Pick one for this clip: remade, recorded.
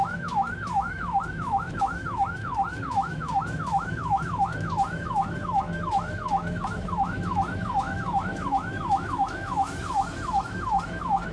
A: remade